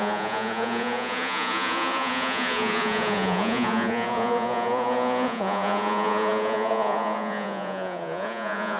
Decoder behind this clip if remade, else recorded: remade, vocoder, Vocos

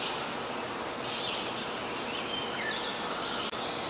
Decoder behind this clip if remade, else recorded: recorded